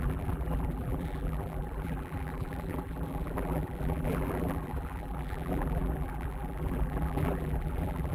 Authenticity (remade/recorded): remade